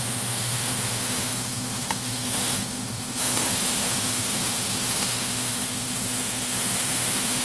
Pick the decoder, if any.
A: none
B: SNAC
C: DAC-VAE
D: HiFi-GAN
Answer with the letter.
C